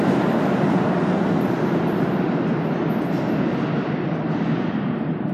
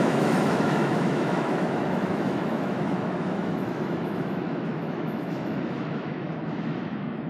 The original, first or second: first